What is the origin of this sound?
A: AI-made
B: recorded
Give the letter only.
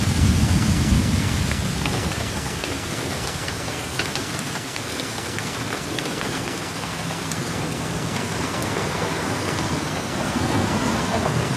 A